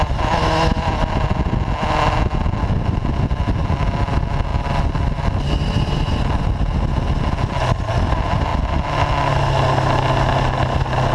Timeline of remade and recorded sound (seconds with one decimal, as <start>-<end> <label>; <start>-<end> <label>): 0.0-11.1 recorded